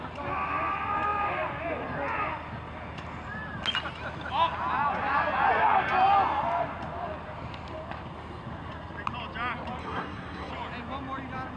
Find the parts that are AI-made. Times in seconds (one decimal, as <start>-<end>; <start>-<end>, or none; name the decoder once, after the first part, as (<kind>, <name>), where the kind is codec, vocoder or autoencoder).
9.8-10.5 (codec, SNAC)

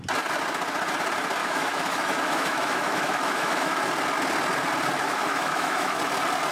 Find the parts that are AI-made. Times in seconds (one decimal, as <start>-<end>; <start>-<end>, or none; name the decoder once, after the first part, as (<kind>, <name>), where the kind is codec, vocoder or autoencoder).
1.4-3.8 (autoencoder, DAC-VAE); 5.0-6.0

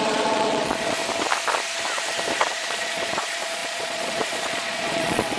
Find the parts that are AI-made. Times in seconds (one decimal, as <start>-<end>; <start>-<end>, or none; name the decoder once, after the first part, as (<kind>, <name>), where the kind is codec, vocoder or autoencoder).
0.0-1.0 (vocoder, Vocos); 2.4-5.4

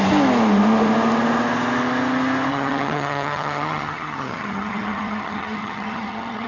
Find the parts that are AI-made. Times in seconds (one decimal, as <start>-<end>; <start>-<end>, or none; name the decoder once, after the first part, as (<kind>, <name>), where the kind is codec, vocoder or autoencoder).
2.5-6.5 (vocoder, HiFi-GAN)

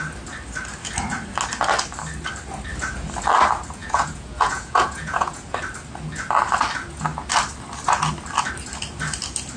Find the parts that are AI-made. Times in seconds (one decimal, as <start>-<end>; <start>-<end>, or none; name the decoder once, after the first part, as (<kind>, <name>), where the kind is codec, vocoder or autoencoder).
3.8-5.5 (vocoder, Vocos)

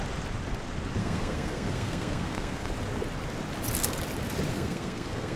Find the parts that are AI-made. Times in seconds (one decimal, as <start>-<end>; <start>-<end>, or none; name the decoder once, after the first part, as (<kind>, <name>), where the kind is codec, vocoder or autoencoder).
1.0-2.7 (codec, SNAC); 4.5-5.4

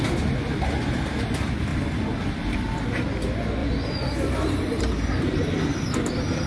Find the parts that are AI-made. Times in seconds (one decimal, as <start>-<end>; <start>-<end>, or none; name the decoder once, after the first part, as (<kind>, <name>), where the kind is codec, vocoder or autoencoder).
1.7-3.1 (vocoder, BigVGAN v2); 3.6-4.8

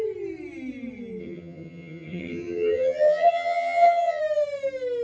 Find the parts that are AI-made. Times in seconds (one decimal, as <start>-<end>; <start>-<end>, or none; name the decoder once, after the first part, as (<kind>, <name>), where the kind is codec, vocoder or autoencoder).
1.2-4.2 (vocoder, HiFi-GAN)